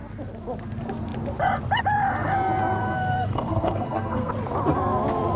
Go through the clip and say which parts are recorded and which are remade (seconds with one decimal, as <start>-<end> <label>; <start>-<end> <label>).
0.0-2.8 recorded; 2.8-4.3 remade; 4.3-5.4 recorded